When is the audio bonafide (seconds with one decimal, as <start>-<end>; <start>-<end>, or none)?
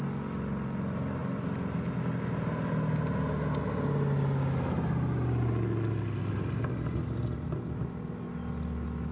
0.0-9.1